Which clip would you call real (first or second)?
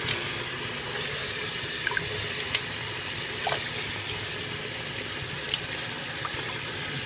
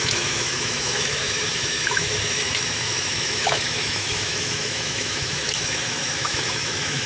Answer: first